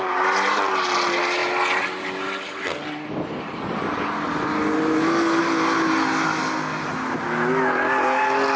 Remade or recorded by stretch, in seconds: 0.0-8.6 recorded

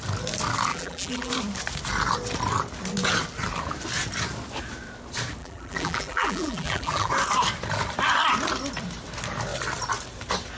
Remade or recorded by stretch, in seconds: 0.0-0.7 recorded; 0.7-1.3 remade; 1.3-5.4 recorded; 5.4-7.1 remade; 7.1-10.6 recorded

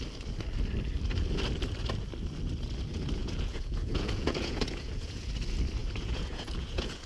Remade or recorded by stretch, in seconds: 0.0-3.2 recorded; 3.2-5.3 remade; 5.3-5.8 recorded; 5.8-7.1 remade

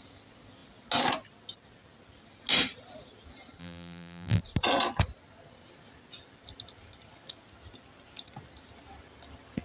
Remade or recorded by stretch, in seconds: 0.0-3.6 recorded; 3.6-4.4 remade; 4.4-9.6 recorded

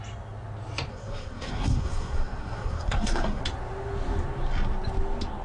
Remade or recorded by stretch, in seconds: 0.0-0.9 recorded; 0.9-3.4 remade; 3.4-5.4 recorded

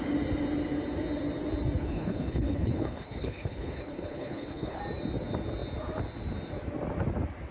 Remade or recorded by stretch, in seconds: 0.0-1.8 recorded; 1.8-4.8 remade; 4.8-7.5 recorded

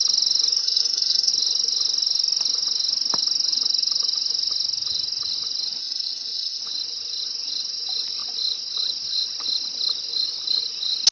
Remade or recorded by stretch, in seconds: 0.0-0.6 recorded; 0.6-1.3 remade; 1.3-5.8 recorded; 5.8-6.6 remade; 6.6-11.1 recorded

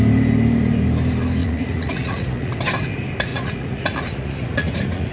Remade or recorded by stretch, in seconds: 0.0-1.4 recorded; 1.4-2.5 remade; 2.5-3.3 recorded; 3.3-5.1 remade